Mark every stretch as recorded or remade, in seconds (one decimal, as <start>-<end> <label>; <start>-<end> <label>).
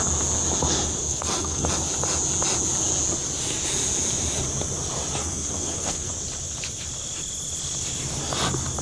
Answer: 0.0-1.0 recorded; 1.0-1.7 remade; 1.7-5.2 recorded; 5.2-6.1 remade; 6.1-8.8 recorded